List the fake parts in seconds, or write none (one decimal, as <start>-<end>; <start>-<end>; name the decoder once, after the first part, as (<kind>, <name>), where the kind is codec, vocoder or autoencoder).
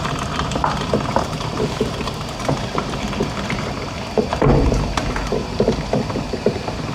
0.0-6.9 (vocoder, BigVGAN v2)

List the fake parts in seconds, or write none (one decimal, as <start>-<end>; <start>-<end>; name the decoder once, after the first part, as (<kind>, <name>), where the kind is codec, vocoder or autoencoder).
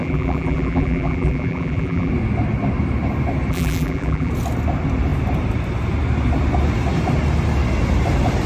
0.0-2.1 (vocoder, BigVGAN v2); 3.5-4.3